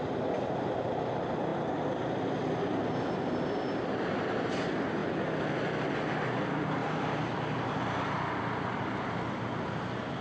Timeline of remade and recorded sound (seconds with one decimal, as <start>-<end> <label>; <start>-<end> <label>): 0.0-10.2 recorded